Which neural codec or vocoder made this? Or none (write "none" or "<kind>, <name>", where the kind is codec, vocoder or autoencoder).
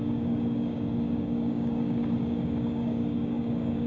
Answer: codec, DAC